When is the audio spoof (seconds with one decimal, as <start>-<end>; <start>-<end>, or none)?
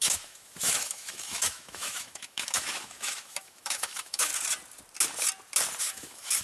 0.0-4.3; 5.8-6.4